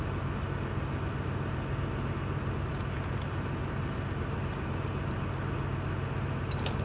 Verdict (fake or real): real